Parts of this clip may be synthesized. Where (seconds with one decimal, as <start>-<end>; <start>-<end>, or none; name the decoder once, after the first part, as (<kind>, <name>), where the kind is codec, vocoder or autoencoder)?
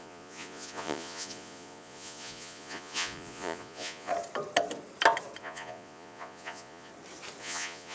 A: 0.0-4.1 (vocoder, Vocos); 5.4-6.9; 7.4-7.9